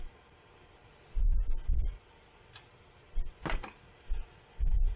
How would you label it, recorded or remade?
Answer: recorded